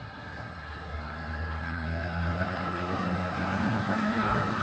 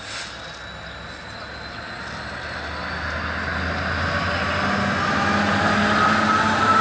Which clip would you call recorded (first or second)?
second